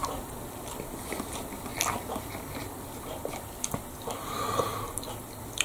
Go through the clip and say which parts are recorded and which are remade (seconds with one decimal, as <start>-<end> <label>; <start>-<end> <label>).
0.0-5.6 recorded